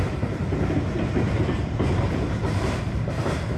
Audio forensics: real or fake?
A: real